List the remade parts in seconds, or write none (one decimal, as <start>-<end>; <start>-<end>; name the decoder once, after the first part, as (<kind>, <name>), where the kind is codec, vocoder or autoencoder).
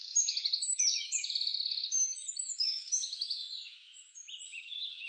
0.0-5.1 (autoencoder, DAC-VAE)